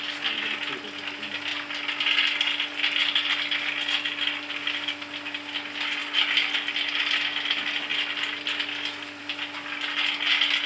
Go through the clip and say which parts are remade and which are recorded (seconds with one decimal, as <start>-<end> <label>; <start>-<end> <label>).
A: 0.0-10.7 recorded